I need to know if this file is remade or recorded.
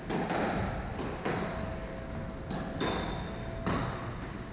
recorded